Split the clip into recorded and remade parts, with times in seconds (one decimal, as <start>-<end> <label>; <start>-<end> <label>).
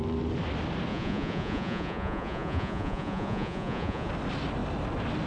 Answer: 0.0-0.9 recorded; 0.9-4.1 remade; 4.1-5.3 recorded